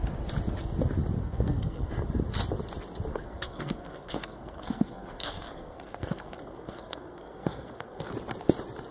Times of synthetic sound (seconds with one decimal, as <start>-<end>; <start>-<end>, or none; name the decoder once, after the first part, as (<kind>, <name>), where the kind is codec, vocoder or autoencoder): 1.2-1.9 (codec, SNAC); 3.1-8.1